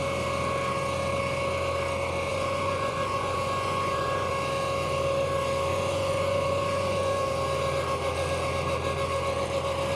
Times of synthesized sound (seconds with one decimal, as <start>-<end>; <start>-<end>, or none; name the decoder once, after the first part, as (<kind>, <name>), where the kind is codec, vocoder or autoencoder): 2.3-4.3 (vocoder, Vocos); 5.7-7.3